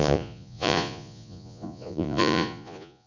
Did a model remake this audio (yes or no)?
yes